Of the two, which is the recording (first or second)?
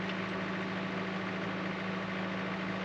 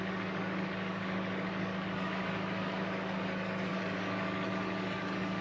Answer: first